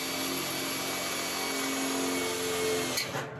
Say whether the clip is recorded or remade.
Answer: recorded